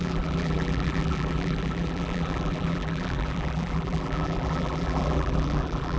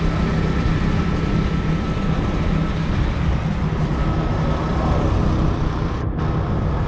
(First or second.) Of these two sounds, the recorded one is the second